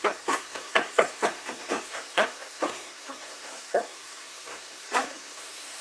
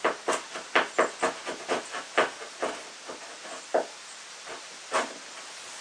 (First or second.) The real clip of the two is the second